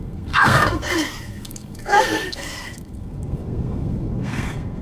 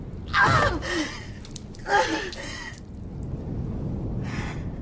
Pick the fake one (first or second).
first